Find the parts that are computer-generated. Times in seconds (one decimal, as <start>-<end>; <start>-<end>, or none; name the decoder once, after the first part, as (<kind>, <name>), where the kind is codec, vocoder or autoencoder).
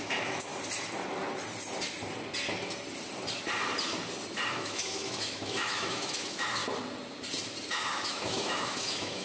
0.0-0.5 (autoencoder, DAC-VAE); 4.5-6.6; 7.7-9.2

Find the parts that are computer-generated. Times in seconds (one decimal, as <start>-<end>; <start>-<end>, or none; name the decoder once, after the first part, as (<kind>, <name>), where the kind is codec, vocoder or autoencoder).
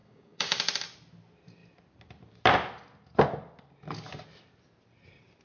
0.0-0.6 (codec, DAC)